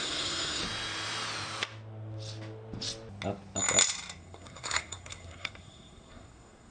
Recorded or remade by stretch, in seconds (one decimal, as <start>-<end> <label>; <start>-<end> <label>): 0.0-0.6 remade; 0.6-4.2 recorded; 4.2-6.7 remade